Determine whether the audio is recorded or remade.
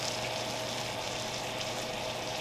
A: recorded